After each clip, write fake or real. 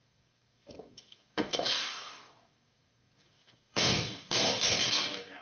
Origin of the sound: fake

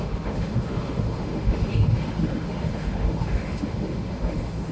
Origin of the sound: fake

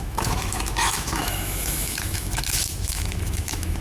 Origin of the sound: fake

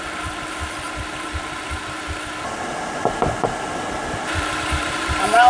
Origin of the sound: fake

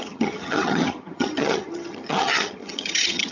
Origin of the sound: fake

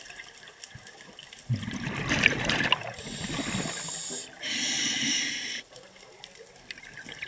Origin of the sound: real